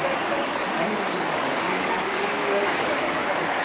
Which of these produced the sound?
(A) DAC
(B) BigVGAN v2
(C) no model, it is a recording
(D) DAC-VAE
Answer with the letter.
A